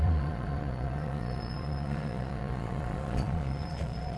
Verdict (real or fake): fake